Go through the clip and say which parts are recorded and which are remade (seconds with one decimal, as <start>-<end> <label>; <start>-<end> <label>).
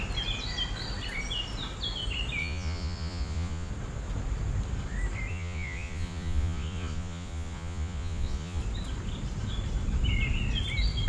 0.0-2.4 recorded; 2.4-3.7 remade; 3.7-5.3 recorded; 5.3-8.6 remade; 8.6-11.1 recorded